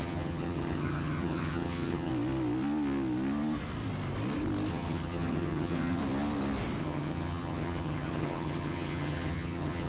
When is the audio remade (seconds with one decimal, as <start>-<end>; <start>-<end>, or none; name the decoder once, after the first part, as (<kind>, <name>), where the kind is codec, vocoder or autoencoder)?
0.0-2.1 (vocoder, HiFi-GAN); 4.7-6.0; 6.8-9.9